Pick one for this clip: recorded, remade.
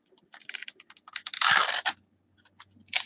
recorded